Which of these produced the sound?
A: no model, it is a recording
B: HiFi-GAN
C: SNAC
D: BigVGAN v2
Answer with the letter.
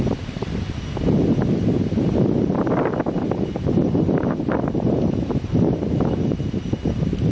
A